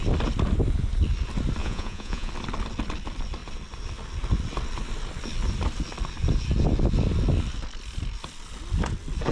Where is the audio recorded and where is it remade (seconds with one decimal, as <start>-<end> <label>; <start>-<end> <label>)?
0.0-1.6 recorded; 1.6-2.3 remade; 2.3-9.3 recorded